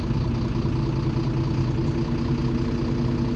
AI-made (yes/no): no